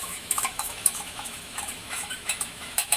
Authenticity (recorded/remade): remade